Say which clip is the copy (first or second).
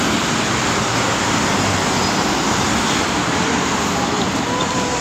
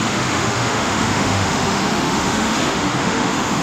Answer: second